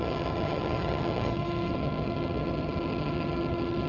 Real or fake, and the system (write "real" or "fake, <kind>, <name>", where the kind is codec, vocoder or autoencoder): fake, vocoder, HiFi-GAN